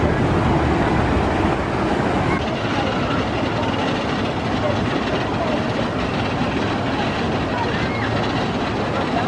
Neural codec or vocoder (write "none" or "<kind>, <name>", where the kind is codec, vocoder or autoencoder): none